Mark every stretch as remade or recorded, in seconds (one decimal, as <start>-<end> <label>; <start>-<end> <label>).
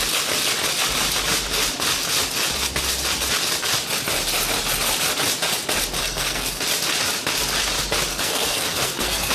0.0-6.0 recorded; 6.0-6.6 remade; 6.6-8.1 recorded; 8.1-9.3 remade